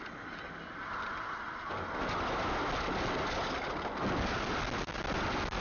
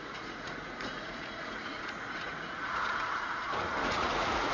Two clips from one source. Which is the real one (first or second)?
first